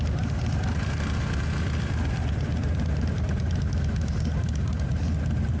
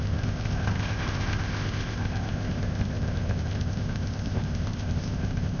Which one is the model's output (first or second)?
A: second